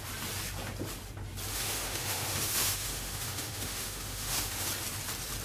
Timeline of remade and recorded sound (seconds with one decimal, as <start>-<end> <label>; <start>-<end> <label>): 0.0-1.5 recorded; 1.5-4.7 remade; 4.7-5.4 recorded